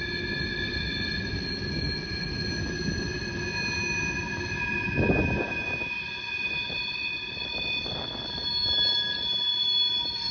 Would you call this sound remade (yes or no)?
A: no